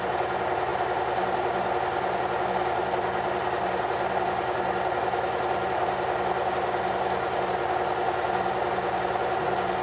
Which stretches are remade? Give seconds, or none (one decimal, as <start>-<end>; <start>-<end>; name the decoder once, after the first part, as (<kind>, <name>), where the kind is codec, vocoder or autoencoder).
none